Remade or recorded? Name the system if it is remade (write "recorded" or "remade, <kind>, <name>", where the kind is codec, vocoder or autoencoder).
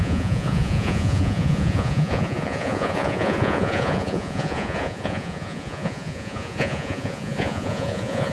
remade, vocoder, Vocos